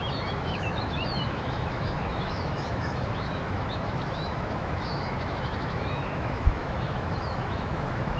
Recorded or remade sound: remade